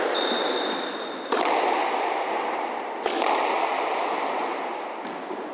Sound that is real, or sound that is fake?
real